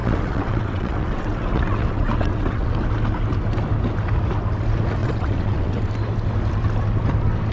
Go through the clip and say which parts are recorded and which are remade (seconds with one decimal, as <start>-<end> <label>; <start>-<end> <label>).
0.0-2.7 remade; 2.7-5.0 recorded; 5.0-5.9 remade; 5.9-7.5 recorded